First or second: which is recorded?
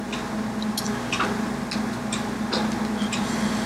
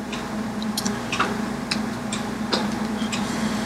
first